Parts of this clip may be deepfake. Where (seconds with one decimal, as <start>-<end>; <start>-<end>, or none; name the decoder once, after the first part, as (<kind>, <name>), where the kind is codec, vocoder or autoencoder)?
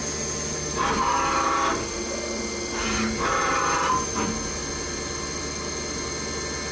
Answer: none